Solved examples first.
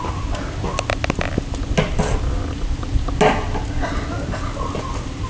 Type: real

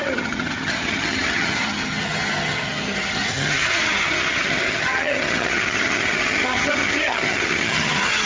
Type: fake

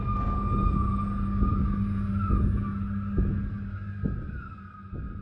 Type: real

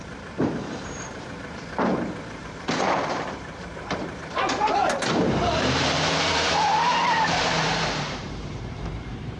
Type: fake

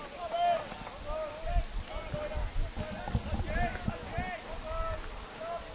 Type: real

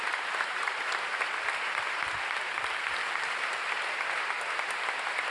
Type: real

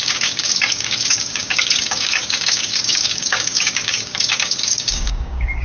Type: fake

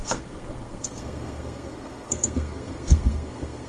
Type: fake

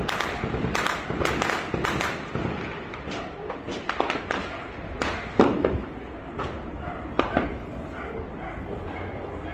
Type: real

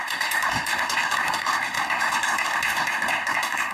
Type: fake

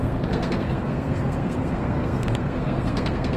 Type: fake